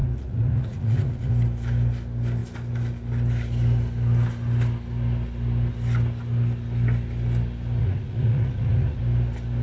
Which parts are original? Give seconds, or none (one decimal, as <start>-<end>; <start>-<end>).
1.3-7.8; 9.0-9.6